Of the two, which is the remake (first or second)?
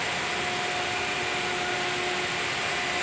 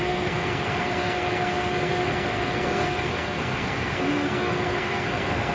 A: second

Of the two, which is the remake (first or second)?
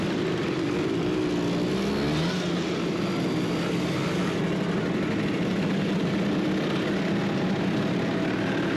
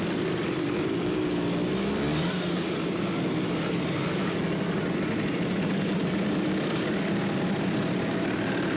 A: second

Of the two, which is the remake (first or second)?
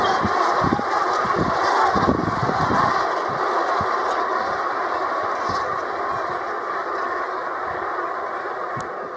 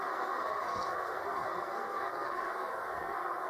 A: second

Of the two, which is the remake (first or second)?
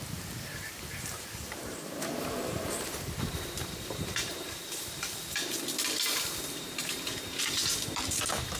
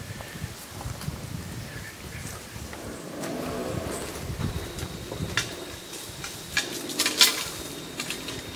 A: first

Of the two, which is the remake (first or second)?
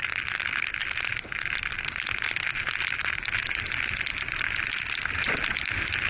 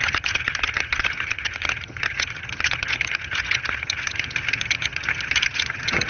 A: second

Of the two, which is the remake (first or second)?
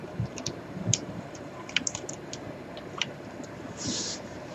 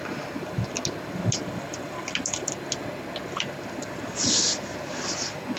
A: first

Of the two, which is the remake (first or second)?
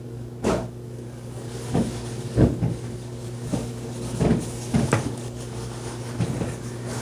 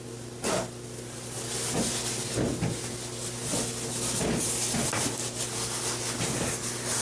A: first